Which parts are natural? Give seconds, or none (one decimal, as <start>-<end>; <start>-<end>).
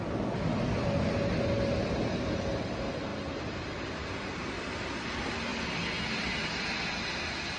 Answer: 0.0-7.6